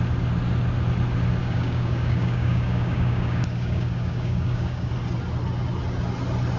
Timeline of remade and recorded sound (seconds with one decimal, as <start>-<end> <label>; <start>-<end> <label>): 0.0-1.4 recorded; 1.4-4.9 remade; 4.9-6.6 recorded